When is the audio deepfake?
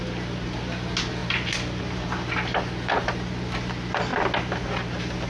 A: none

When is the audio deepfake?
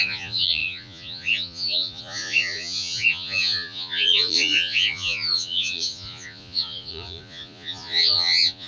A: 0.0-8.7 (vocoder, Vocos)